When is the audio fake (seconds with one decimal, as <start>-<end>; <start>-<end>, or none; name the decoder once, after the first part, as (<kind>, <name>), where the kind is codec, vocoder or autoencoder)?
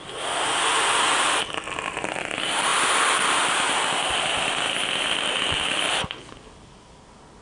none